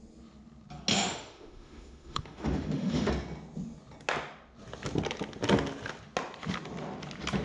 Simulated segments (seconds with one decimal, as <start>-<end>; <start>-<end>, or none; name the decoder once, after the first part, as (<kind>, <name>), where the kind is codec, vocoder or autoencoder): 0.9-3.1 (autoencoder, DAC-VAE)